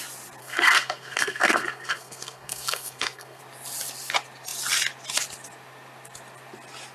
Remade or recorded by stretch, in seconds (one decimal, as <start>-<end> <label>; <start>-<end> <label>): 0.0-0.4 recorded; 0.4-3.4 remade; 3.4-6.9 recorded